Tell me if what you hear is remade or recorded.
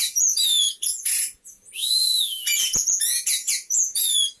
remade